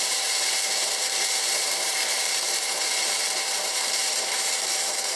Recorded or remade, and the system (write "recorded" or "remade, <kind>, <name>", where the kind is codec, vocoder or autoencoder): remade, vocoder, BigVGAN v2